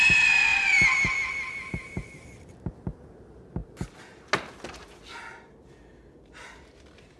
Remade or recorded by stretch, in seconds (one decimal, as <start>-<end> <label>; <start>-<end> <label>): 0.0-0.5 recorded; 0.5-2.7 remade; 2.7-7.2 recorded